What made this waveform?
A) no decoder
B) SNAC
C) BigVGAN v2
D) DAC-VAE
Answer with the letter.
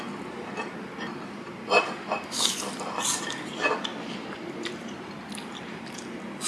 C